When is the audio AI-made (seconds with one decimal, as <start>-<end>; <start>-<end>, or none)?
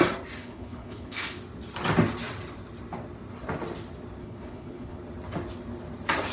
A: 0.4-1.4; 4.2-5.0